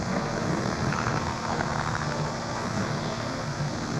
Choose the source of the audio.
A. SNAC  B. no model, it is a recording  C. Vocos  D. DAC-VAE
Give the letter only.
A